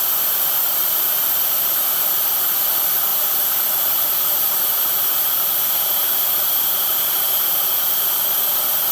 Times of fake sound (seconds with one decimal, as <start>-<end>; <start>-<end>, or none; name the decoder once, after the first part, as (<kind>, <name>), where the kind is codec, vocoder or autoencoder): 0.7-1.8 (vocoder, BigVGAN v2); 3.1-7.8